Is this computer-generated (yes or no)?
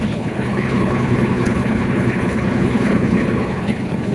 yes